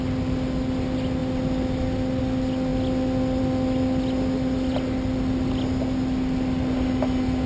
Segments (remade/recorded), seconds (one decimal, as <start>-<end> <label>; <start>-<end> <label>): 0.0-7.5 recorded